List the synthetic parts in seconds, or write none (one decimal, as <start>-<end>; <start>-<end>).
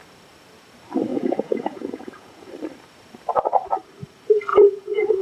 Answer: 1.1-2.5; 4.5-5.2